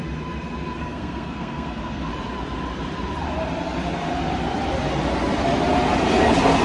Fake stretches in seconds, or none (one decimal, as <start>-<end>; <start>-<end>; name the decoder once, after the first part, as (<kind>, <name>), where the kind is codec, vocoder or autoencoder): 0.8-2.1 (codec, SNAC)